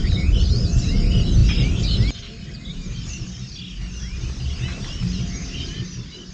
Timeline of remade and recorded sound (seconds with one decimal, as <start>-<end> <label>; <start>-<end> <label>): 0.0-6.3 recorded